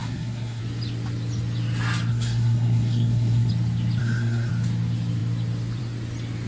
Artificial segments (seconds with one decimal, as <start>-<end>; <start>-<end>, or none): 0.0-0.6; 2.1-3.5; 4.0-4.5